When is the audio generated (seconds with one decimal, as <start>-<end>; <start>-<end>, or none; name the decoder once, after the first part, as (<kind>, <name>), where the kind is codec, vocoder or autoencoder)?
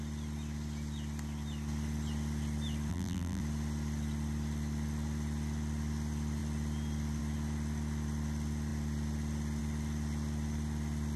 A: 2.9-3.4 (vocoder, BigVGAN v2)